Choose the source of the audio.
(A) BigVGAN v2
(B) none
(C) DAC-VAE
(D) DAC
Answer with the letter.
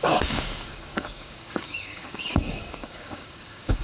D